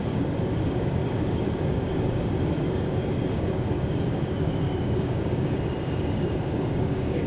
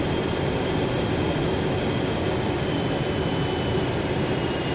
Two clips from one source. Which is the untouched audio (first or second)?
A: second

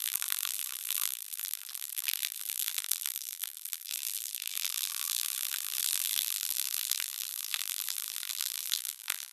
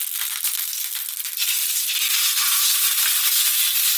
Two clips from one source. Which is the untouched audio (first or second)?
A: second